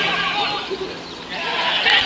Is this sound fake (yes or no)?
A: no